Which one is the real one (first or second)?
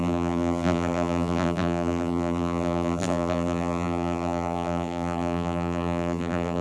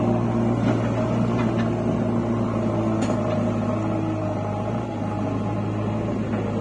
second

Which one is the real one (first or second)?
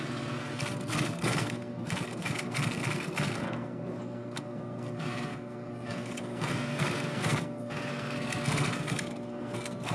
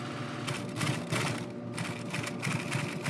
second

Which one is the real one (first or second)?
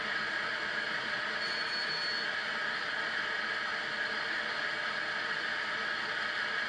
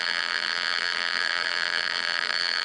first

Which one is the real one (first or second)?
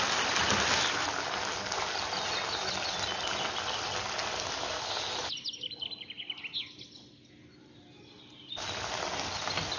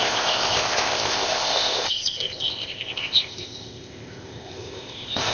first